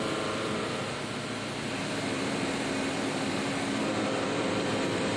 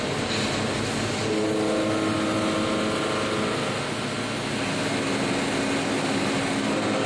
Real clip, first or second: second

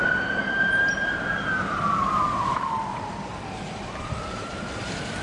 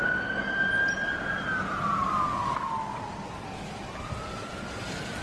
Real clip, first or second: second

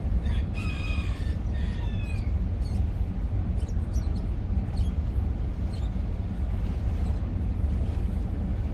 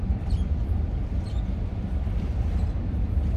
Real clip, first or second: first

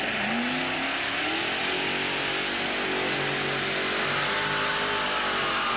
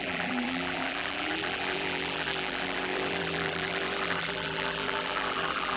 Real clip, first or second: first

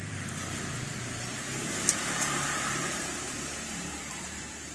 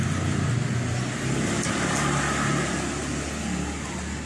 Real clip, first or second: second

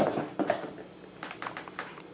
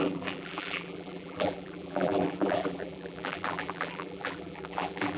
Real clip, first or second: first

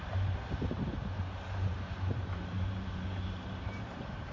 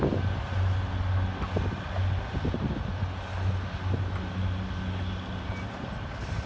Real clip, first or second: second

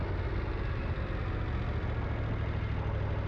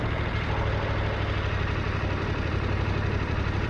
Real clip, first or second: first